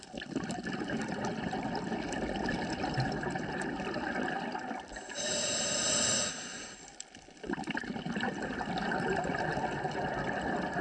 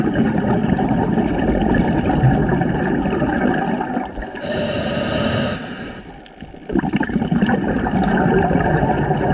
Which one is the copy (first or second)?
first